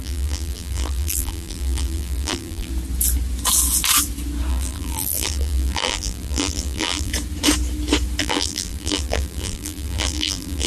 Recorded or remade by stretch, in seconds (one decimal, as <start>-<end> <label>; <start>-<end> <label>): 0.0-2.7 remade; 2.7-4.5 recorded; 4.5-7.1 remade; 7.1-8.2 recorded; 8.2-10.7 remade